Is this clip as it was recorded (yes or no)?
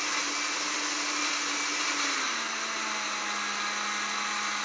yes